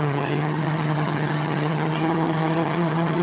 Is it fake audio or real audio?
fake